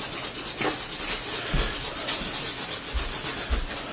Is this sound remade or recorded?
recorded